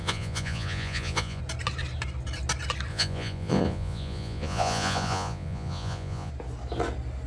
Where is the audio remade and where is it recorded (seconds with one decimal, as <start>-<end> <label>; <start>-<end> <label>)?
0.0-1.4 remade; 1.4-2.9 recorded; 2.9-6.3 remade; 6.3-7.3 recorded